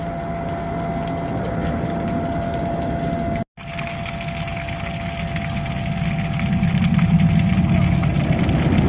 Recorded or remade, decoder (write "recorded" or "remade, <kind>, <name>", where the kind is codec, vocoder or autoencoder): recorded